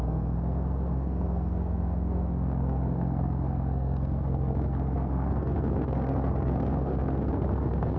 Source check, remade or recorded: remade